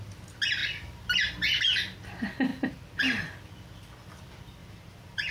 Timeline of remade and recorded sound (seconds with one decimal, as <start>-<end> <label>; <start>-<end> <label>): 0.0-0.6 recorded; 0.6-1.6 remade; 1.6-4.6 recorded; 4.6-5.3 remade